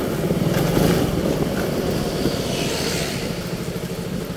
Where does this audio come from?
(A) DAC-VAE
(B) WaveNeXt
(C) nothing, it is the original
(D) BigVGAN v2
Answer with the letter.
C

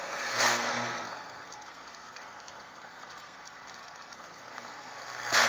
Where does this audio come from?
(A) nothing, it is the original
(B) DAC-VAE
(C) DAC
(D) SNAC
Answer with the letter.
D